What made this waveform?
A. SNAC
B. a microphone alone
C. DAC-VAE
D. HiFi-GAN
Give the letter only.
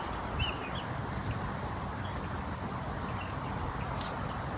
B